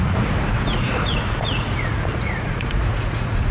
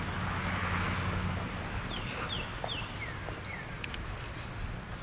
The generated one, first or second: first